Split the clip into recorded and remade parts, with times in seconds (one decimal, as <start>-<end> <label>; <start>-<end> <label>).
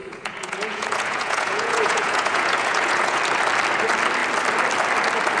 0.0-3.2 remade; 3.2-5.4 recorded